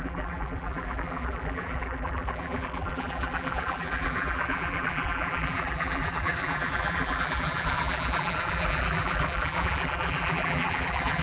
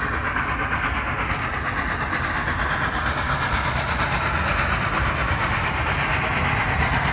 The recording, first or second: second